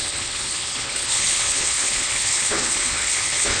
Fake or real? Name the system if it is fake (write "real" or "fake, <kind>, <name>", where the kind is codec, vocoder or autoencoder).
fake, codec, HILCodec